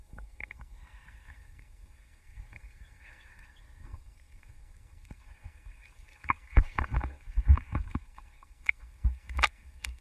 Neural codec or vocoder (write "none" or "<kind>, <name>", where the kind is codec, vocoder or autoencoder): codec, SNAC